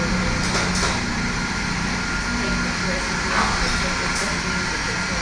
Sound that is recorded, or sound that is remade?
recorded